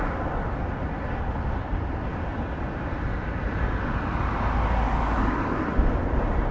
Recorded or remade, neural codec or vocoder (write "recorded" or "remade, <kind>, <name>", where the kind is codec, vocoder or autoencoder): recorded